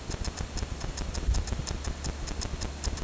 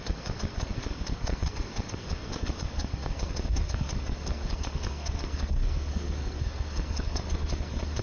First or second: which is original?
first